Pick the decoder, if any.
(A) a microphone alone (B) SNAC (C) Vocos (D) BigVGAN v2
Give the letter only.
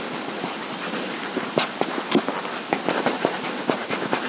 D